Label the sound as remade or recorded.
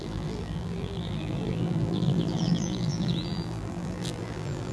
remade